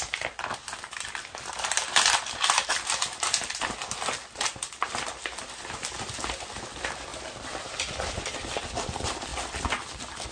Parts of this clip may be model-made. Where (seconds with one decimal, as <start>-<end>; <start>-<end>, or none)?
0.0-7.1; 8.1-9.3; 9.8-10.3